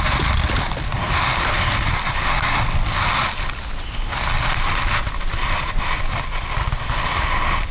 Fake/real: real